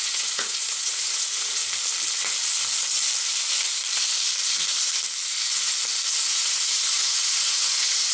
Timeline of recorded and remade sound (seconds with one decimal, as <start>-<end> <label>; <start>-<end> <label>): 0.0-1.6 remade; 1.6-6.2 recorded; 6.2-8.1 remade